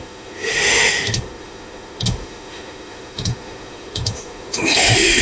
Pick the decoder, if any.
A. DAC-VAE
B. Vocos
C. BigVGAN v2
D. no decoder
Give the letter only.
A